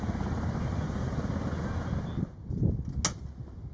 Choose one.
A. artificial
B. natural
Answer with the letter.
B